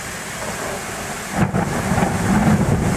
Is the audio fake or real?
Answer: real